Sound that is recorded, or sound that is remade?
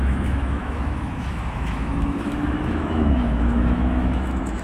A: remade